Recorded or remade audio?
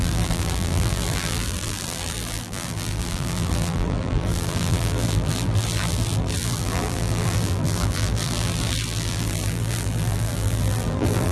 remade